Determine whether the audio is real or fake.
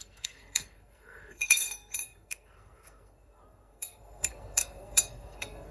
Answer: fake